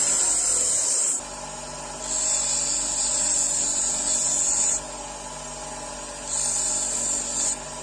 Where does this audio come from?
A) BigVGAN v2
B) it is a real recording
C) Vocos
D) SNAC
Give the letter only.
B